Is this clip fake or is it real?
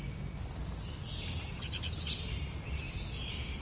real